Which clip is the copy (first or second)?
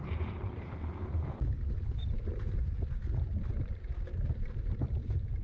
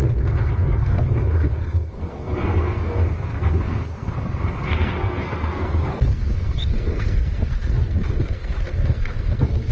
second